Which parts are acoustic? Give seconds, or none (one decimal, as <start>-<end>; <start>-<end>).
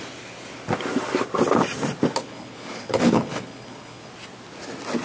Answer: 0.0-2.2; 4.1-5.0